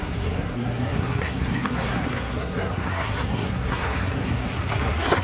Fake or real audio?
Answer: fake